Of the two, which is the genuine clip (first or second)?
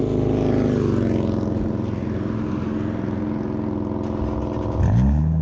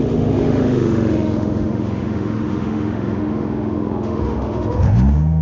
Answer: first